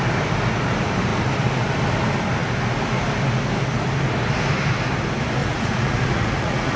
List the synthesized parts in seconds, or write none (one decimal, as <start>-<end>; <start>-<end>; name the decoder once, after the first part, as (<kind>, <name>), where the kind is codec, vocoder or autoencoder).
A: 5.4-6.8 (vocoder, Vocos)